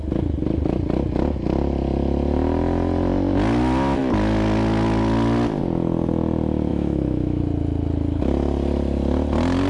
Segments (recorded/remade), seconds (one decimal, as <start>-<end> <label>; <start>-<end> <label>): 0.0-6.7 recorded; 6.7-7.4 remade; 7.4-9.7 recorded